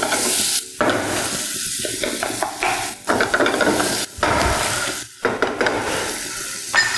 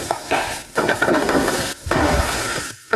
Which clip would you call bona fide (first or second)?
first